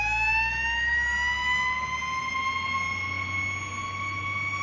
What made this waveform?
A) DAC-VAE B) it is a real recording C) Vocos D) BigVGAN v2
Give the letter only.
B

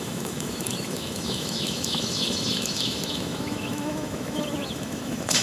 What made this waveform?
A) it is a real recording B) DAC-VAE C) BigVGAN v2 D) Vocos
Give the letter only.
B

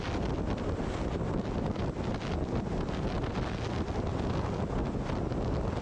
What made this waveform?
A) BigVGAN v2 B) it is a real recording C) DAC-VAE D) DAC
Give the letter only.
B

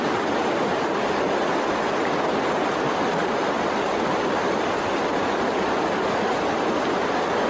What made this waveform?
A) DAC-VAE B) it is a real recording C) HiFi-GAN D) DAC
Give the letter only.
B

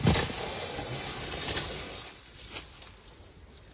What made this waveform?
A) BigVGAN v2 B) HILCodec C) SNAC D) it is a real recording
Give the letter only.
D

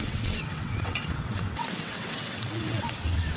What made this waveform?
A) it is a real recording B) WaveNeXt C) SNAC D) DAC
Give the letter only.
B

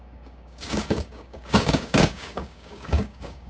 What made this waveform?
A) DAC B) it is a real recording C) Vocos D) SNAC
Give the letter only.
A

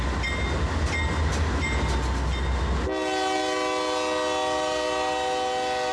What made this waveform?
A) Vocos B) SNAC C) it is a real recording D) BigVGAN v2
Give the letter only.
C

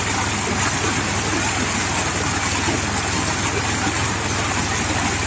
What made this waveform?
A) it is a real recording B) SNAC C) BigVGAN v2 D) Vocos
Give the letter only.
A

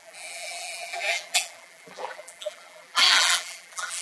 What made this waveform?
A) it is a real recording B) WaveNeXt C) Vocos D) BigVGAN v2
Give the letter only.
D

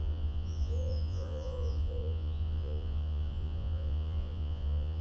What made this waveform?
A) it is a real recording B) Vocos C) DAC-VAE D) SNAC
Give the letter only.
B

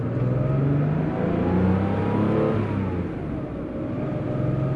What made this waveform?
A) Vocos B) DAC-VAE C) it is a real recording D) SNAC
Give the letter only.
C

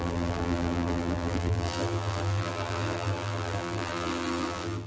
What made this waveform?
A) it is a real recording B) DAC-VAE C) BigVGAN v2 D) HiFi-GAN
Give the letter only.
C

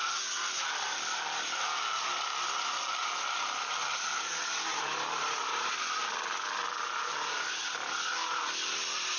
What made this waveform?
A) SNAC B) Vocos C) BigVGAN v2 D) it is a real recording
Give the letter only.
D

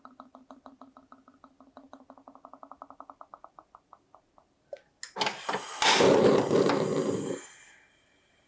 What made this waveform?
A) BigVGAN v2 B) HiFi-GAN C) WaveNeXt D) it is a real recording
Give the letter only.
D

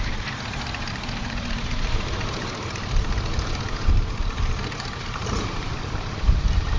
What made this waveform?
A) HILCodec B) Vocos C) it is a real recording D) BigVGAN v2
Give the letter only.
D